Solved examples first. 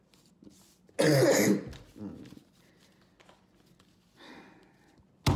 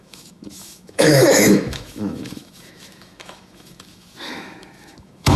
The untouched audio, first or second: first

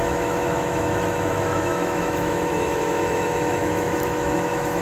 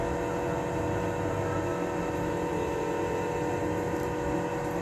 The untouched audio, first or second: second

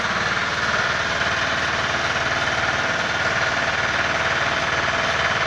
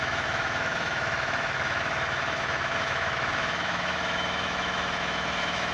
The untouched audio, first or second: first